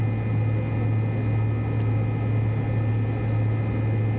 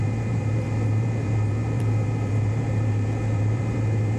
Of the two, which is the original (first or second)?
first